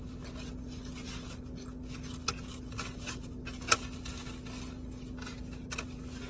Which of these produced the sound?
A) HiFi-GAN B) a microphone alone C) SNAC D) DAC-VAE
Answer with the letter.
B